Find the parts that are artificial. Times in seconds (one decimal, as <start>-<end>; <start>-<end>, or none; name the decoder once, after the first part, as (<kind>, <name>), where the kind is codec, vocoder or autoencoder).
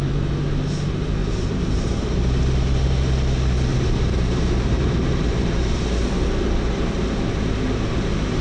1.2-2.2 (vocoder, BigVGAN v2); 3.7-5.9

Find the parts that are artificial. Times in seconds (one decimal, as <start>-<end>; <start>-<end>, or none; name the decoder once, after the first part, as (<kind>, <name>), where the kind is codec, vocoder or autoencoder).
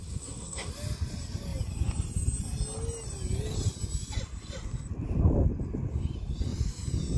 0.0-0.7 (codec, SNAC)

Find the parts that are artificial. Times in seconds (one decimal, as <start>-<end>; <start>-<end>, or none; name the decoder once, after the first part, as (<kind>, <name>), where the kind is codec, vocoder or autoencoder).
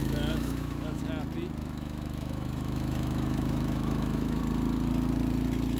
0.0-1.0 (autoencoder, DAC-VAE); 1.6-4.4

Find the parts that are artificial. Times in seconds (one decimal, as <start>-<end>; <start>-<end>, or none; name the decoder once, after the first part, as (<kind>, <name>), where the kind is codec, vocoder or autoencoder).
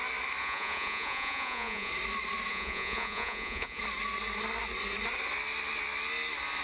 0.4-1.9 (vocoder, Vocos); 2.5-3.8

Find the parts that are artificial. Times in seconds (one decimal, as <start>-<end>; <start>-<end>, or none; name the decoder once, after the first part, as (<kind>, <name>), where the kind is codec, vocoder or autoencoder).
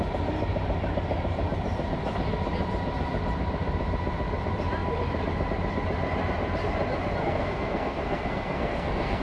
7.2-9.2 (codec, SNAC)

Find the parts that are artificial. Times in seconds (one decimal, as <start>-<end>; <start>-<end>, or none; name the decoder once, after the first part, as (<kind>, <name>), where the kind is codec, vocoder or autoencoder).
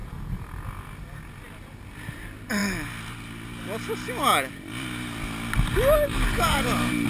none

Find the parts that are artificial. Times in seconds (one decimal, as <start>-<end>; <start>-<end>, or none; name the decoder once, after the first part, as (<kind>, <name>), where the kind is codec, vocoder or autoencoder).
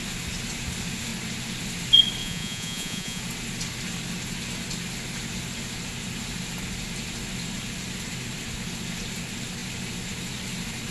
2.2-3.2 (vocoder, Vocos)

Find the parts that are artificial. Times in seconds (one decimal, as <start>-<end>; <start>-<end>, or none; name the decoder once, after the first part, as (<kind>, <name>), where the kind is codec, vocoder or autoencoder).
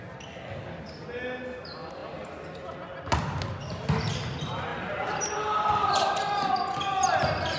none